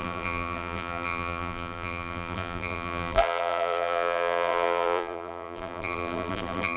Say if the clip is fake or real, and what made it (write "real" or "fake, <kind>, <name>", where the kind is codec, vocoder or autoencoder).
fake, vocoder, BigVGAN v2